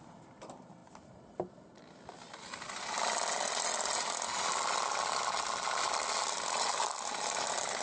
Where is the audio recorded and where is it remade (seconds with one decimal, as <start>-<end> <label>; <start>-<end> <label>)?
0.0-7.8 recorded